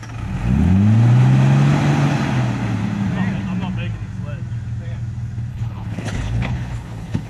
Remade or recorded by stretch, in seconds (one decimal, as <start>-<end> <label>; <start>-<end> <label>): 0.0-5.5 recorded; 5.5-7.3 remade